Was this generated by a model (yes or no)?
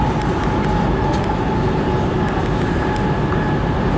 no